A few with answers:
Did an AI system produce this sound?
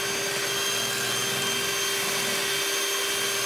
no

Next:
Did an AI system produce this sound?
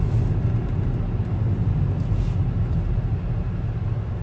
no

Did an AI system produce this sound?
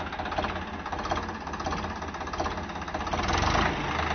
no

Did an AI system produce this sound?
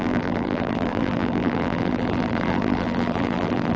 yes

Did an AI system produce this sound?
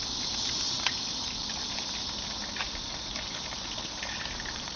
no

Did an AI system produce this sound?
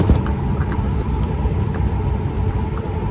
yes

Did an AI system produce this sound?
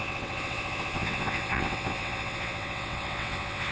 yes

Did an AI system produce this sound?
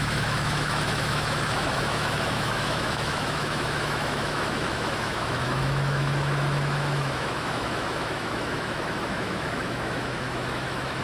yes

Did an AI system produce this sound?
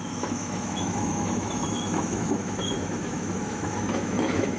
yes